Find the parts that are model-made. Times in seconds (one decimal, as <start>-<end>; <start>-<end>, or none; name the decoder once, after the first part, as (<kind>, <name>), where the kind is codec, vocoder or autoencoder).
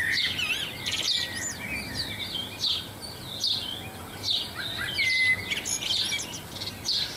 none